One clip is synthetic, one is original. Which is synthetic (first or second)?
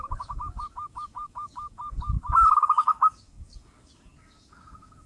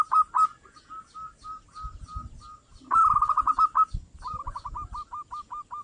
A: first